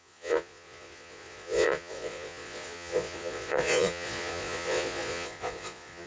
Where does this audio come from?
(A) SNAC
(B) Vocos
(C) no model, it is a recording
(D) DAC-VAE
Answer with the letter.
B